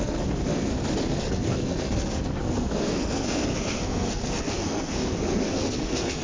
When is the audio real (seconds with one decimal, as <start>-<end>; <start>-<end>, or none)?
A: 0.7-1.2